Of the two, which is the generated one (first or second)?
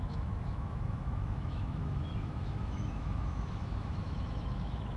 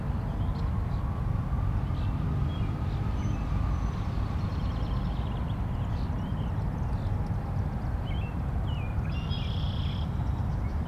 first